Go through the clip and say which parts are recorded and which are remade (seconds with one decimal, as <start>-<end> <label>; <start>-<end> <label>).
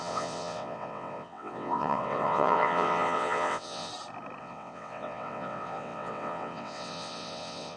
0.0-3.9 remade; 3.9-4.4 recorded; 4.4-7.8 remade